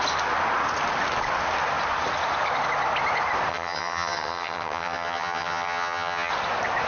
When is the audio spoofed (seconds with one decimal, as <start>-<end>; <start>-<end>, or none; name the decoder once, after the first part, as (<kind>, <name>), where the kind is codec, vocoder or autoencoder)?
3.5-6.3 (vocoder, HiFi-GAN)